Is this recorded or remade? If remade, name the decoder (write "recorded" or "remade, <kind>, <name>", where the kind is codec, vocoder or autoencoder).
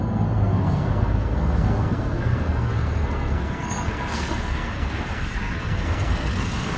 remade, codec, SNAC